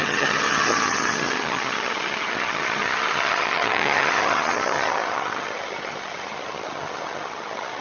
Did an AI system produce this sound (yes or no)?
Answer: yes